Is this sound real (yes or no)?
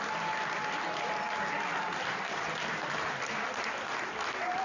yes